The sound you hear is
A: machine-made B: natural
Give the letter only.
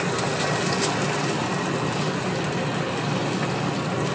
B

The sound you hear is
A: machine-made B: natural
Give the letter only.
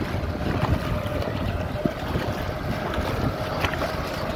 B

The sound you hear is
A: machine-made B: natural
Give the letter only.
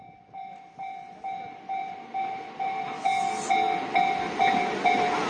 B